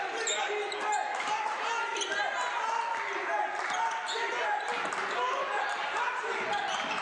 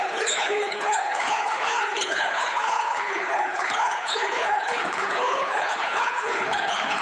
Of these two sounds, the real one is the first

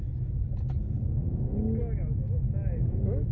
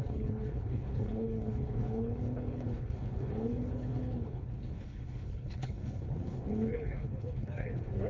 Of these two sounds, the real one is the first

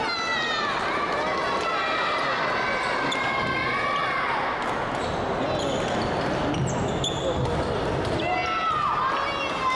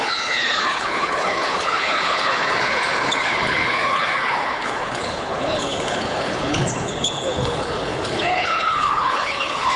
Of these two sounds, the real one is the first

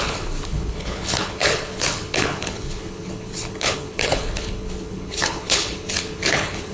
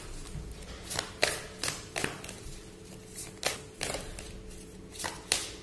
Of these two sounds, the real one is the second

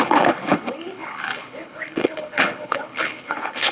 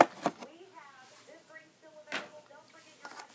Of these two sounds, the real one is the second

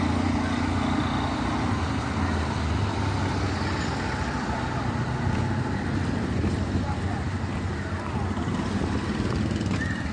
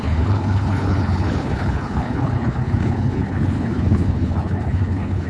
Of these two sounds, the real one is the first